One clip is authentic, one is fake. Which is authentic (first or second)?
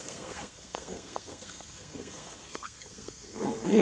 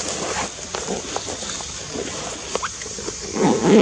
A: second